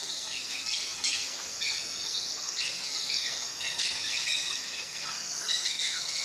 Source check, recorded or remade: remade